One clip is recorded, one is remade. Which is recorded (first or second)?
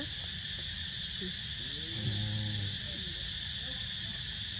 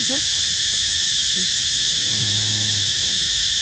first